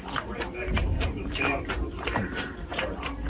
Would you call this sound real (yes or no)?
no